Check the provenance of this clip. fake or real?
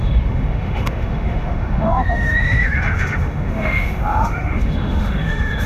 fake